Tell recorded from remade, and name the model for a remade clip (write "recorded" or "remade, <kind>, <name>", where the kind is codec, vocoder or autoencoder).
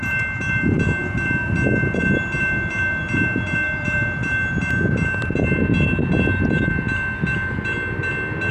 recorded